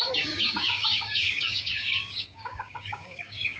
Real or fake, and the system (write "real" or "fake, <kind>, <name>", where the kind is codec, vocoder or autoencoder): fake, codec, DAC